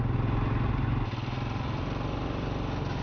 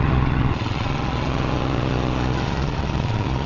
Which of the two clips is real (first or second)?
first